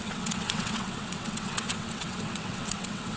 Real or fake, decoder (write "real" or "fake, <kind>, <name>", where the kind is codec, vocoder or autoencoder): fake, vocoder, WaveNeXt